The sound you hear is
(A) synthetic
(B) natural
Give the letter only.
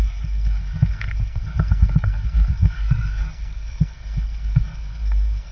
A